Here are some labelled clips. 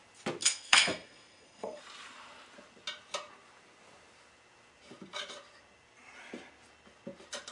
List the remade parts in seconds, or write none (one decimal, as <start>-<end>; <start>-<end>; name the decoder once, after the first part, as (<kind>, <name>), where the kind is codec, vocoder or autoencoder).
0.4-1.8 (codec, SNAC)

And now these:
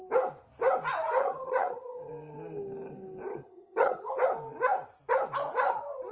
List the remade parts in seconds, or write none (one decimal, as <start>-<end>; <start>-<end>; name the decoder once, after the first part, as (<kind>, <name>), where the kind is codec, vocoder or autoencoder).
1.2-2.1 (vocoder, HiFi-GAN); 3.3-4.1

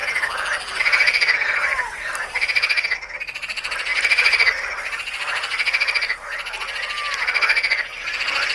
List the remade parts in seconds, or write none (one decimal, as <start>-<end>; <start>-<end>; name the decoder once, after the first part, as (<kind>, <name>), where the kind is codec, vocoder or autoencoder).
none